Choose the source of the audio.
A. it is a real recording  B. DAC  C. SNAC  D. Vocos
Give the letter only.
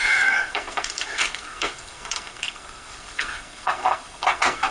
C